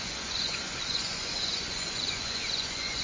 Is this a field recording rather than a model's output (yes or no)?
no